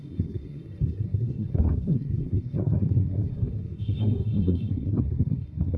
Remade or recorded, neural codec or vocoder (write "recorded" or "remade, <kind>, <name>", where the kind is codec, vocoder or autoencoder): remade, codec, SNAC